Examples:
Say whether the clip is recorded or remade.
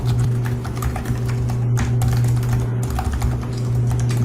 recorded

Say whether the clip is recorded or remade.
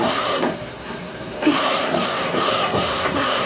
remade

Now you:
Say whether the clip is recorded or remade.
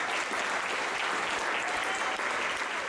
recorded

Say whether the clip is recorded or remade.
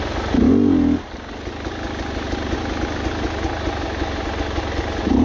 recorded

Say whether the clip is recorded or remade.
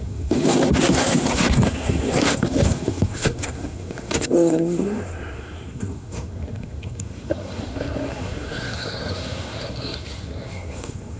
remade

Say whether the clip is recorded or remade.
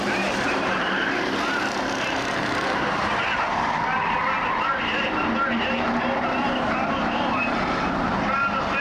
remade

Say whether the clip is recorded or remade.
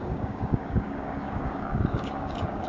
remade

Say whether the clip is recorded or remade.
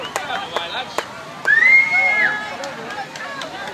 recorded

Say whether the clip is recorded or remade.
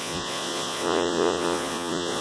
remade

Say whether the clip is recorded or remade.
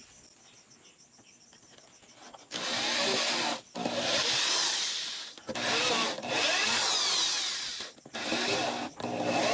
recorded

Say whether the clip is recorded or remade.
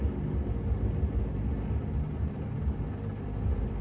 recorded